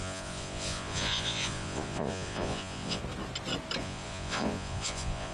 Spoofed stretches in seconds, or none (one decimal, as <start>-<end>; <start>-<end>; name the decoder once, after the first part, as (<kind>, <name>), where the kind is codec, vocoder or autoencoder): 0.0-3.0 (vocoder, Vocos); 3.8-5.3